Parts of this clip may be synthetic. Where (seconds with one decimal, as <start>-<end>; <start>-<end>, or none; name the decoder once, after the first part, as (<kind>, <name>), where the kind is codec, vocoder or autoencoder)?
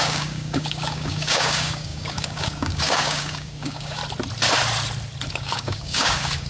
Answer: 0.0-4.0 (codec, DAC); 5.3-6.5